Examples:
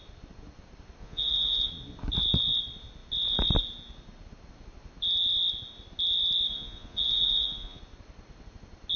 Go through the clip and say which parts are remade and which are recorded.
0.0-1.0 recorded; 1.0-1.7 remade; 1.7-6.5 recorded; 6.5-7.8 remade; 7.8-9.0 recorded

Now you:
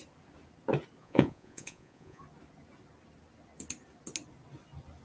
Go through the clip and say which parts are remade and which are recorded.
0.0-1.0 recorded; 1.0-2.2 remade; 2.2-5.0 recorded

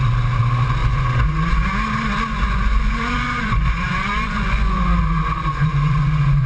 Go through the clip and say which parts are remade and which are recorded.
0.0-0.8 recorded; 0.8-1.7 remade; 1.7-2.3 recorded; 2.3-6.5 remade

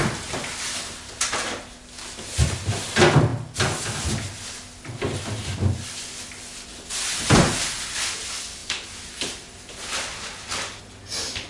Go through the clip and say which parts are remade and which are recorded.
0.0-11.5 recorded

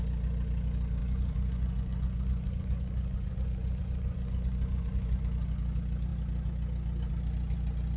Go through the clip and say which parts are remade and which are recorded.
0.0-1.0 recorded; 1.0-5.2 remade; 5.2-8.0 recorded